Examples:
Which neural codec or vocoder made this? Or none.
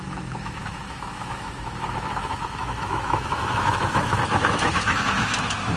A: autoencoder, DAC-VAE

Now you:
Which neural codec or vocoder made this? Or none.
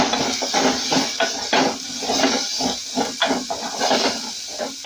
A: none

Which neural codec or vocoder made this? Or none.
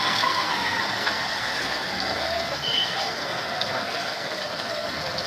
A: codec, SNAC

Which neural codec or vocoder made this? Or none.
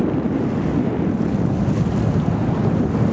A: none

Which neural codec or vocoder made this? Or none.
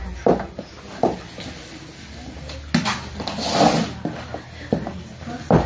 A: none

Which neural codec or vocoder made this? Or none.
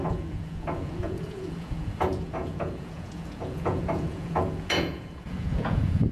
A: vocoder, Vocos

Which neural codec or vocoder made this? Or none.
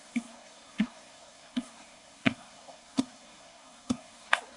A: codec, SNAC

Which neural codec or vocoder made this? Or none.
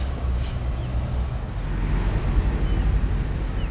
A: none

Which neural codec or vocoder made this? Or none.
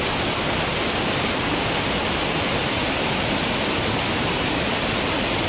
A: vocoder, BigVGAN v2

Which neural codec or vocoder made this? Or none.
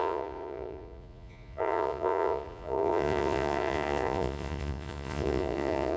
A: vocoder, Vocos